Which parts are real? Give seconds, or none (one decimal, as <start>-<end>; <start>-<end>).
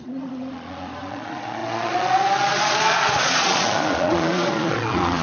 none